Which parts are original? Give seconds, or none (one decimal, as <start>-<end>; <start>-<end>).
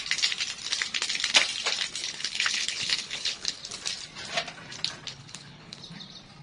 0.0-2.0; 3.6-5.1; 5.8-6.4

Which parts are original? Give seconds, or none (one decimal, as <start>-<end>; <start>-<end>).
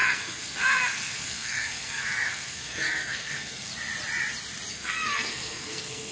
3.7-4.7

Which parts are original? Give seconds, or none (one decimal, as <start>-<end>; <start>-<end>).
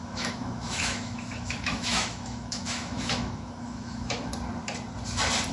4.3-5.5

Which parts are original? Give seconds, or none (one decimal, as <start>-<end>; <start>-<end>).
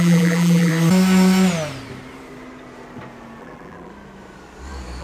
0.7-3.4; 3.9-5.0